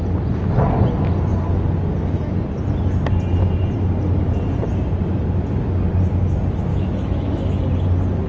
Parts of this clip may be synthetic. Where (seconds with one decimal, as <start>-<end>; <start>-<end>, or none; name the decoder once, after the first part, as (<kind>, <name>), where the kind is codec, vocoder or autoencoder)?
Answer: 6.7-7.6 (autoencoder, DAC-VAE)